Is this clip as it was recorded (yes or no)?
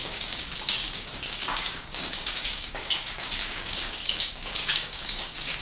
no